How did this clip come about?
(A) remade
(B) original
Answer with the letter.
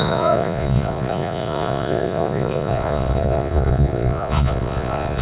A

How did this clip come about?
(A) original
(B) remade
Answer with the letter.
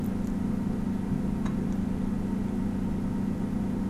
A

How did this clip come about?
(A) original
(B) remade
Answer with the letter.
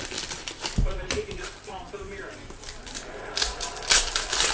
B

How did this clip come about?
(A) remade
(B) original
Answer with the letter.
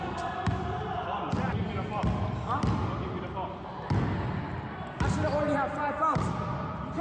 B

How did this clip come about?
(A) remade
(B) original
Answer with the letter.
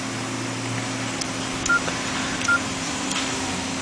B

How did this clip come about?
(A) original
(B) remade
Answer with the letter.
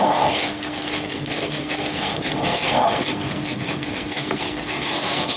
B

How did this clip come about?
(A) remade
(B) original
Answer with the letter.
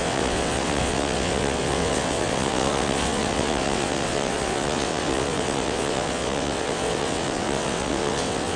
A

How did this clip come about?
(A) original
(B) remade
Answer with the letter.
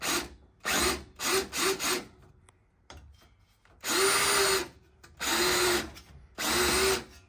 A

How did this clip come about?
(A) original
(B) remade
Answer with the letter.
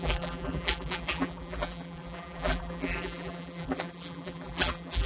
B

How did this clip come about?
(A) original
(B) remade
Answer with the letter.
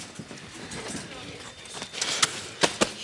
A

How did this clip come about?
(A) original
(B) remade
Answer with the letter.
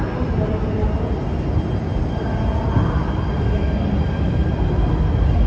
A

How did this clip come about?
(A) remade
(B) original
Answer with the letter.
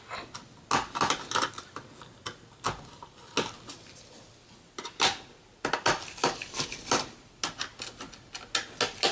B